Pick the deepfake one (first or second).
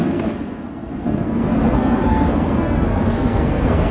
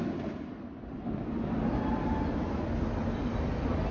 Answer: first